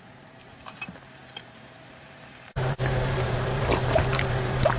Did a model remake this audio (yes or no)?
yes